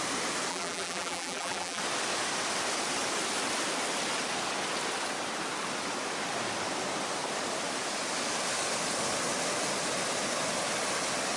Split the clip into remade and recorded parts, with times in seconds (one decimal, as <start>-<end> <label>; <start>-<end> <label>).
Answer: 0.0-0.5 recorded; 0.5-1.8 remade; 1.8-11.4 recorded